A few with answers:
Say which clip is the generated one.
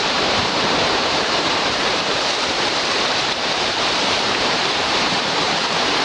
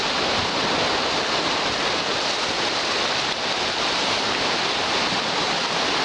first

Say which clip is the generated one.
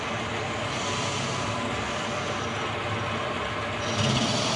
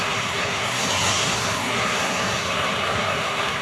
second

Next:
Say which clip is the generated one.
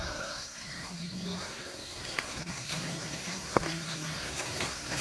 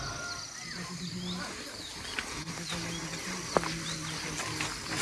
first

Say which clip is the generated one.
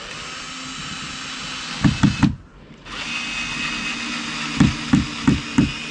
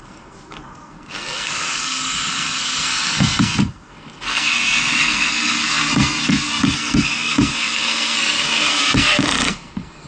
second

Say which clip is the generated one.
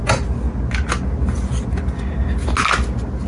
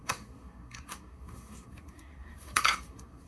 second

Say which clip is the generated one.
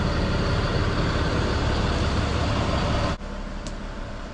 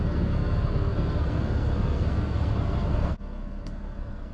second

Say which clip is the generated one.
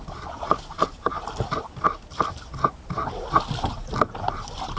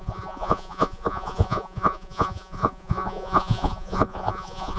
second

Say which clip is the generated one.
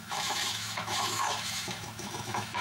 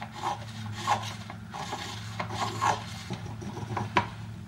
first